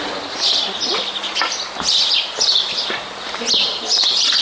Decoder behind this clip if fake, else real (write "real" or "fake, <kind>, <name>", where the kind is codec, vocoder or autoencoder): real